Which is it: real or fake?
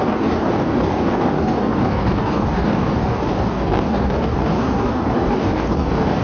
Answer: fake